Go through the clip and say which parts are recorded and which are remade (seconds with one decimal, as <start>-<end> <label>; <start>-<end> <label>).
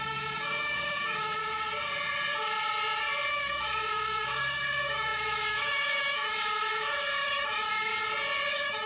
0.0-1.4 remade; 1.4-3.3 recorded; 3.3-7.9 remade; 7.9-8.5 recorded; 8.5-8.9 remade